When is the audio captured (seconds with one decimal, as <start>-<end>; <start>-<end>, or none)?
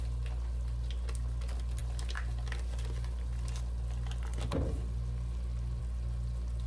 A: 0.0-6.7